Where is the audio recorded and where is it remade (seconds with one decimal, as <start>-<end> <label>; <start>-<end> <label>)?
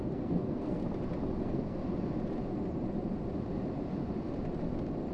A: 0.0-0.8 remade; 0.8-1.4 recorded; 1.4-1.8 remade; 1.8-5.1 recorded